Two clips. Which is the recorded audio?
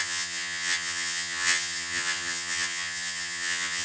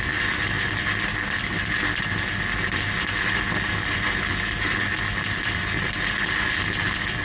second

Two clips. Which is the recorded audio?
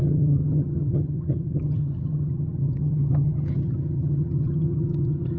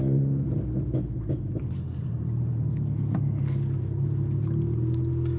second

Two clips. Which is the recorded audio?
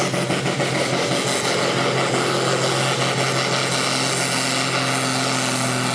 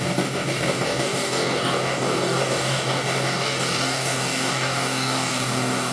first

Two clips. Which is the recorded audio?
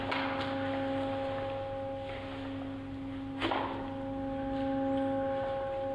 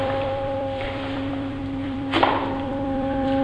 first